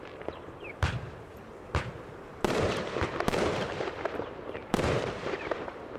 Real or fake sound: fake